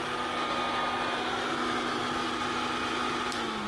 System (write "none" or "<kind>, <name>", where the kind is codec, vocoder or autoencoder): none